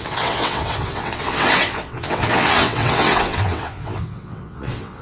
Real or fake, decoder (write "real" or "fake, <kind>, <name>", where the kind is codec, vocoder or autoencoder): fake, vocoder, WaveNeXt